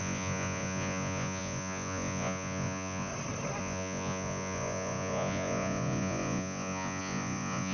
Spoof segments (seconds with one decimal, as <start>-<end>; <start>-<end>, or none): 0.0-3.1; 3.6-7.7